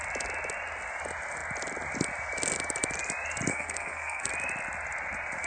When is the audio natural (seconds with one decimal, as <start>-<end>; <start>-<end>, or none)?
0.0-3.5; 4.3-5.5